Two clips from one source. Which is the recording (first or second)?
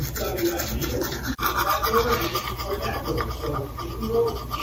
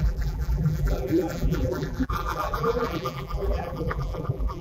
first